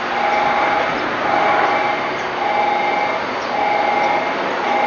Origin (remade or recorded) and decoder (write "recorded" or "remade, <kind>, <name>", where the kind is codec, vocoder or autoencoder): recorded